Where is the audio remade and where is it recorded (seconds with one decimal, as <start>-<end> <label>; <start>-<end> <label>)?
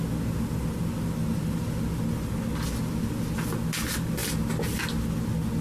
0.0-1.2 recorded; 1.2-1.8 remade; 1.8-5.6 recorded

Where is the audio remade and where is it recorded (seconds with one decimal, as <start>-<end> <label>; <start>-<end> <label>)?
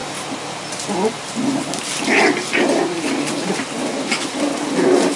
0.0-5.2 recorded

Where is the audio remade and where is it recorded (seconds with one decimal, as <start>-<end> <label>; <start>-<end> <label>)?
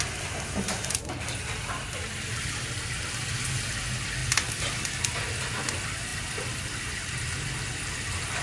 0.0-8.4 recorded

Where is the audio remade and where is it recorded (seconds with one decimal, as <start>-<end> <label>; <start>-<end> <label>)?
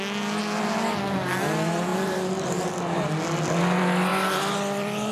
0.0-1.9 recorded; 1.9-2.7 remade; 2.7-5.1 recorded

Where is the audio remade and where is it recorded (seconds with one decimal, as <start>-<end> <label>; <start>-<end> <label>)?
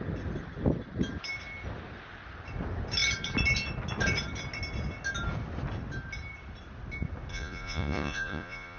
0.0-7.3 recorded; 7.3-8.8 remade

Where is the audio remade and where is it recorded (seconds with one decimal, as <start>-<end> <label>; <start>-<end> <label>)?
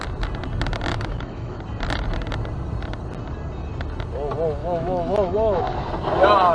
0.0-0.9 recorded; 0.9-1.6 remade; 1.6-4.6 recorded; 4.6-5.6 remade; 5.6-6.5 recorded